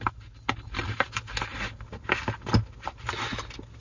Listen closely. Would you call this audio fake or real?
real